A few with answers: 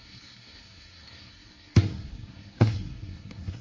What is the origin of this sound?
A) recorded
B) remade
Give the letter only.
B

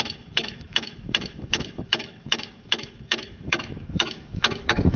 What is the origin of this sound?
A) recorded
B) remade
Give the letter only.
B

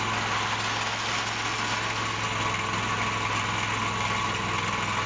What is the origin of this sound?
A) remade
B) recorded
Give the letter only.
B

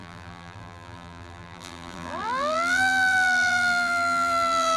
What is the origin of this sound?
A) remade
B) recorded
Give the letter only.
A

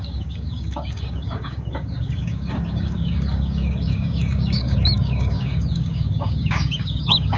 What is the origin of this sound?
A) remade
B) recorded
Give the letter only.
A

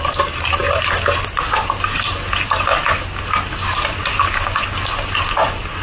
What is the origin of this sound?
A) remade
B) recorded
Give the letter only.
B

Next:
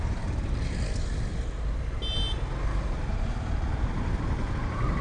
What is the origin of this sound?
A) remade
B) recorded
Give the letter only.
B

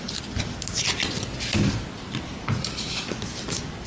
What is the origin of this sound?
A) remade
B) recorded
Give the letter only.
B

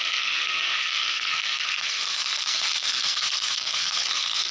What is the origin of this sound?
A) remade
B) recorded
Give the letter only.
A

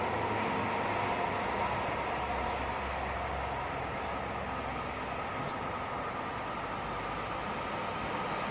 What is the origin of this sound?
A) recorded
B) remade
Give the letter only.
A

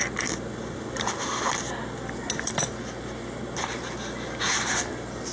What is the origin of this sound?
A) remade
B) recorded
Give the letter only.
B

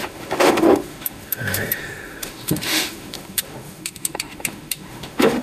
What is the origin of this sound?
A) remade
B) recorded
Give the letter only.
A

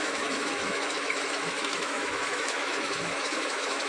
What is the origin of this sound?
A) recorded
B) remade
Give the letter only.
B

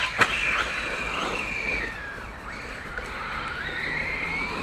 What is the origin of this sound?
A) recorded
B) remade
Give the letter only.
A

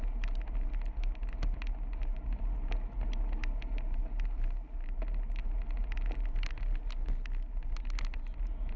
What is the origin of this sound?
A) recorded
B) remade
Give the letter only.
A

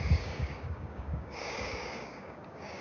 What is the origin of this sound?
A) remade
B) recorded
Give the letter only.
A